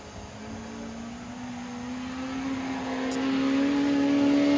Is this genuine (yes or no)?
yes